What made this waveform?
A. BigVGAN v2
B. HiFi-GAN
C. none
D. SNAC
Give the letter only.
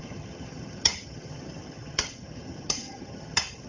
B